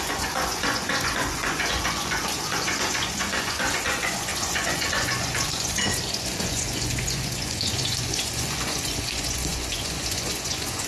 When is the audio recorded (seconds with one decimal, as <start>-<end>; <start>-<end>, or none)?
none